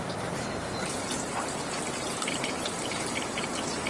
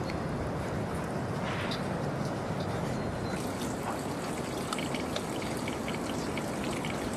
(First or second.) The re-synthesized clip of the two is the first